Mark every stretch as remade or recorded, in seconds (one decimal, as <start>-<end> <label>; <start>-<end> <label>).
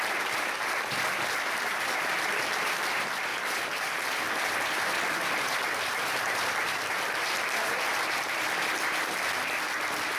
0.0-3.3 remade; 3.3-4.5 recorded; 4.5-10.2 remade